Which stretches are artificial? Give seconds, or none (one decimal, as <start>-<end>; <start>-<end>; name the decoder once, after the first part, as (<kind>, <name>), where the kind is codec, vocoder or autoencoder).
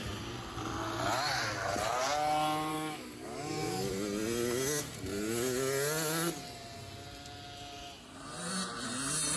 2.7-3.9 (codec, DAC)